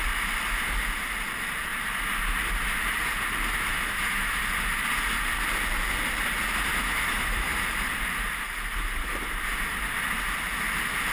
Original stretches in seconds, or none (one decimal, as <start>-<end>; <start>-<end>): 0.0-3.7; 4.4-6.7; 7.6-11.1